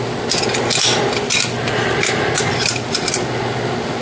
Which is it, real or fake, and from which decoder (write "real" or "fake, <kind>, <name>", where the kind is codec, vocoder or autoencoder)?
real